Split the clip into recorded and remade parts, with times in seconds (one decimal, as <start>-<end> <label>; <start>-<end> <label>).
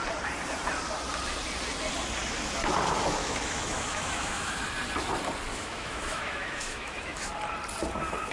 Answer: 0.0-3.2 recorded; 3.2-4.6 remade; 4.6-5.5 recorded; 5.5-7.3 remade; 7.3-8.3 recorded